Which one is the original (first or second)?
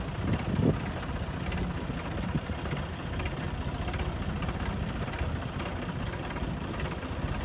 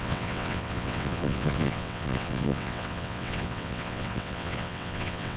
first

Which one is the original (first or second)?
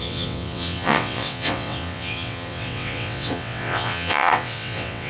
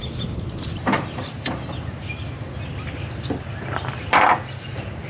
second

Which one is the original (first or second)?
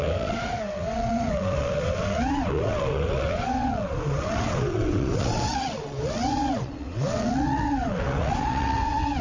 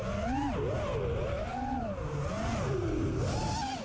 second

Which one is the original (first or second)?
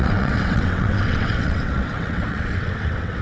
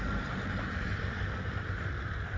second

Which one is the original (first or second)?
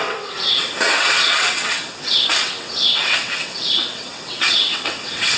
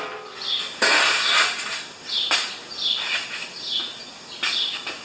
second